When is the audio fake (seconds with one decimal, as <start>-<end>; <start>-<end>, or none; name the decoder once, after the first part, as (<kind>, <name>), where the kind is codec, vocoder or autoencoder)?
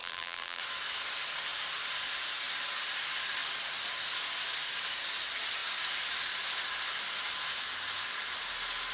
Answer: 0.0-0.6 (vocoder, BigVGAN v2)